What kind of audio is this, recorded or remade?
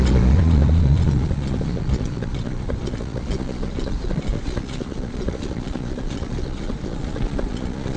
remade